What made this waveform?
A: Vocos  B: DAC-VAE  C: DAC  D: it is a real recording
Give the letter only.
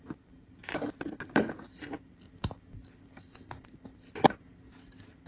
D